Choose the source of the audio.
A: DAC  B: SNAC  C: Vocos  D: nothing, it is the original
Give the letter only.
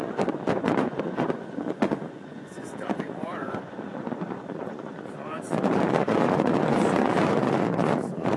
C